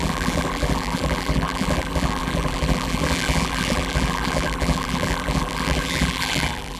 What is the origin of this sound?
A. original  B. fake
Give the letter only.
B